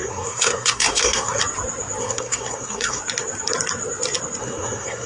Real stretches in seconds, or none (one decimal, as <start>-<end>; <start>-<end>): 1.4-2.0; 3.0-4.4